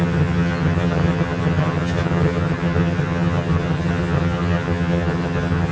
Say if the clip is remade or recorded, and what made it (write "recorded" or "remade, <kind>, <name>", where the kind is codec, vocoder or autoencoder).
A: remade, vocoder, HiFi-GAN